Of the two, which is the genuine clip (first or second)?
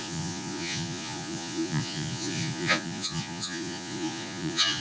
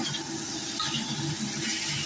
second